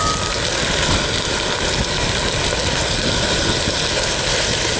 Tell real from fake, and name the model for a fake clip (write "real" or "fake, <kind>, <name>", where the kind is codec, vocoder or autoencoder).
real